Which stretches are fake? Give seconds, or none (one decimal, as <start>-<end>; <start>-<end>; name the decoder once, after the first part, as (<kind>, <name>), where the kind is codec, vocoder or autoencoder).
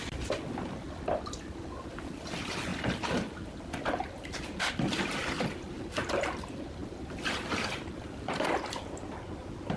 none